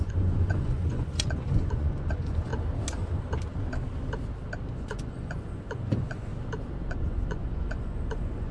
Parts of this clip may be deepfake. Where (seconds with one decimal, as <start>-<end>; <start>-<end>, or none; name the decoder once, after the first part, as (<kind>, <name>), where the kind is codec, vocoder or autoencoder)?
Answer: 0.0-2.5 (vocoder, Vocos); 4.7-6.3; 6.9-8.5